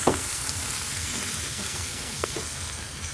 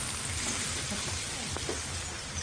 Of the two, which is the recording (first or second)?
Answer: second